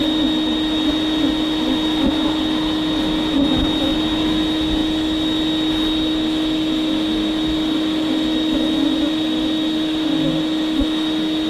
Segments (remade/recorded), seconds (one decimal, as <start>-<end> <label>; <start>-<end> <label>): 0.0-11.5 recorded